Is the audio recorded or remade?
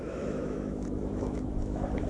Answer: remade